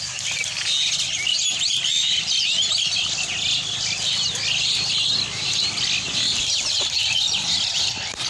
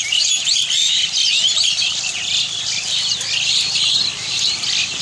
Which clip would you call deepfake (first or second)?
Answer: second